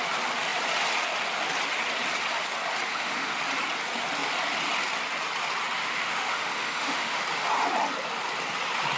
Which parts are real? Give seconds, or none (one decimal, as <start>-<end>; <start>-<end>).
0.0-2.9; 3.4-5.8; 7.2-9.0

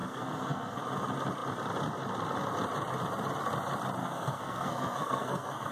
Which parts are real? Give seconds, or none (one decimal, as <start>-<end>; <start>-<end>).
0.8-4.0

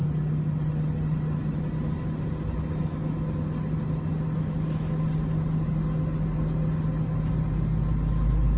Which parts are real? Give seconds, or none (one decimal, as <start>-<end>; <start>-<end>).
0.0-8.6